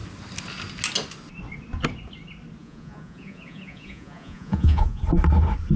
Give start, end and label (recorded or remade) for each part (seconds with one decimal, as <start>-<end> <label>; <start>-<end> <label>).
0.0-2.6 recorded; 2.6-5.0 remade; 5.0-5.8 recorded